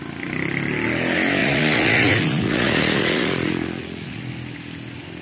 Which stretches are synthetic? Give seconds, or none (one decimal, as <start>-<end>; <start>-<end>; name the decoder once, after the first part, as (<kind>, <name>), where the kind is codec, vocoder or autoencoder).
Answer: 1.4-4.2 (vocoder, Vocos)